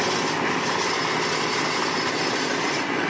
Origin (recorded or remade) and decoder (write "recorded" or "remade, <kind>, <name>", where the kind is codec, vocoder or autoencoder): recorded